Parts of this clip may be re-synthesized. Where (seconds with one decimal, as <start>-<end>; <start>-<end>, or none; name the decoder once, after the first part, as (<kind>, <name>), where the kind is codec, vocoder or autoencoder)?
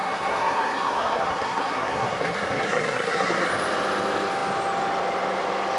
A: 0.0-3.5 (codec, SNAC)